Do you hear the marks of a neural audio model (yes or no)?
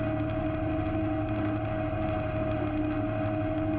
no